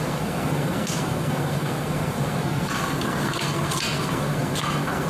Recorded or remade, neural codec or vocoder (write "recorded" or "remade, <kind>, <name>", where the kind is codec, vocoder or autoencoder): remade, codec, SNAC